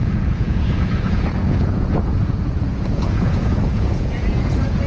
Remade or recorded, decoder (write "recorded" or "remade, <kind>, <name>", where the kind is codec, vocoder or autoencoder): remade, vocoder, Vocos